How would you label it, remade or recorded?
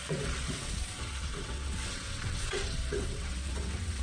remade